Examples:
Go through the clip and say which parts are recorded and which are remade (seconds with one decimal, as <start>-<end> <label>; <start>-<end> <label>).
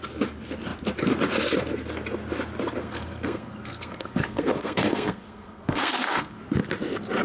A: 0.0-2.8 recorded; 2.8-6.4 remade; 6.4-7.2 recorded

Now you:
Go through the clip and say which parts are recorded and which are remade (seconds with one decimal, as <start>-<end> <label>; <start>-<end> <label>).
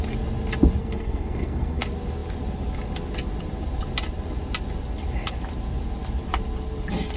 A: 0.0-0.8 recorded; 0.8-1.8 remade; 1.8-7.2 recorded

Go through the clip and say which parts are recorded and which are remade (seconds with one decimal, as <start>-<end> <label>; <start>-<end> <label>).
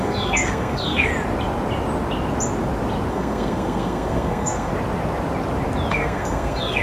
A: 0.0-1.1 remade; 1.1-3.1 recorded; 3.1-4.7 remade; 4.7-5.9 recorded; 5.9-6.8 remade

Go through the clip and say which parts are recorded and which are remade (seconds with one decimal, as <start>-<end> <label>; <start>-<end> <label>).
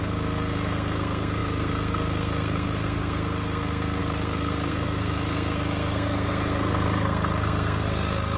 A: 0.0-8.4 remade